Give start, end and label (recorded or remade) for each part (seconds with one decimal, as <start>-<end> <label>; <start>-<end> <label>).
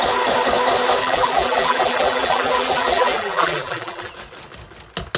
0.0-1.0 recorded; 1.0-4.1 remade; 4.1-5.2 recorded